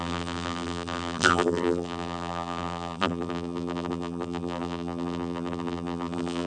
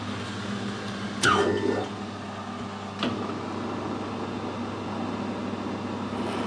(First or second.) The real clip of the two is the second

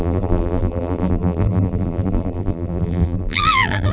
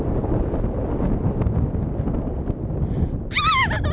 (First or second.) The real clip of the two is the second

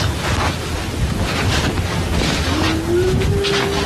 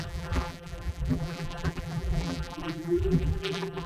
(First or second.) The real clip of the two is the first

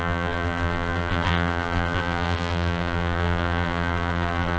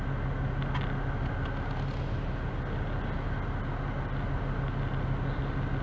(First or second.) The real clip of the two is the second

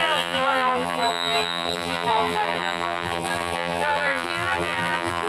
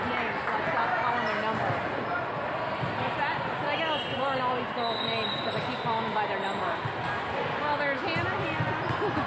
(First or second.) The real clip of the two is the second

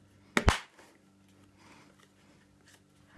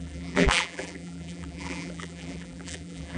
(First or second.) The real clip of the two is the first